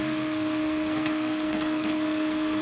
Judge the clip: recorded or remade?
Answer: remade